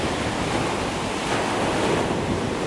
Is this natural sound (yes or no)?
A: yes